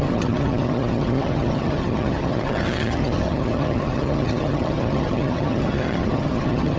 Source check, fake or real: fake